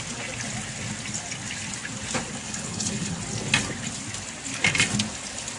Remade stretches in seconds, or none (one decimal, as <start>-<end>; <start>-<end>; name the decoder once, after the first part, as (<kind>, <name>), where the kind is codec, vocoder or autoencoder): 2.4-3.2 (codec, HILCodec)